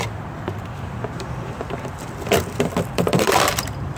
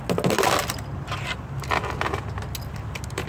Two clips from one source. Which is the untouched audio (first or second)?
second